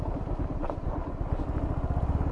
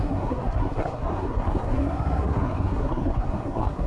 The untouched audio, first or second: first